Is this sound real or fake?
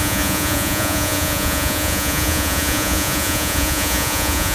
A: fake